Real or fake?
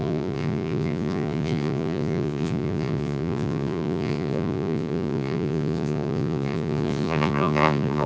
fake